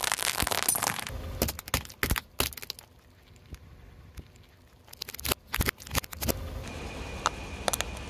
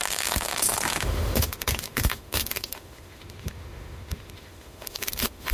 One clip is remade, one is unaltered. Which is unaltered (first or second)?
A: first